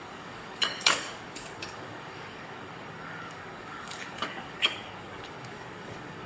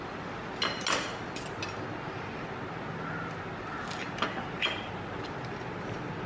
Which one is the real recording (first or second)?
second